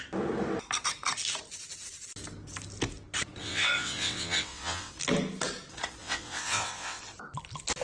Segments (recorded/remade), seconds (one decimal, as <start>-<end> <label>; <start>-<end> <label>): 0.0-3.4 recorded; 3.4-4.9 remade; 4.9-6.0 recorded; 6.0-7.0 remade; 7.0-7.8 recorded

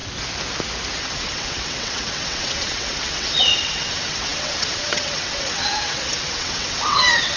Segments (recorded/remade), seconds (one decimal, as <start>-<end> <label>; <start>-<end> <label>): 0.0-1.0 recorded; 1.0-7.4 remade